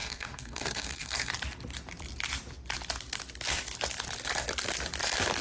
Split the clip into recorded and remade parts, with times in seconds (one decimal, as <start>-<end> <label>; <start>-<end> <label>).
0.0-1.3 remade; 1.3-5.4 recorded